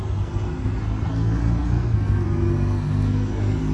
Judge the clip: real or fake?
fake